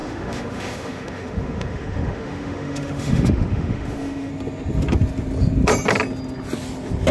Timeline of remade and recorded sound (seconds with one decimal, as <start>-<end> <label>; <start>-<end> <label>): 0.0-4.3 remade; 4.3-7.1 recorded